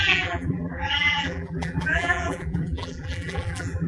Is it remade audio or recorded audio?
remade